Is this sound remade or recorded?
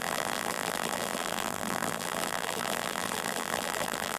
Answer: remade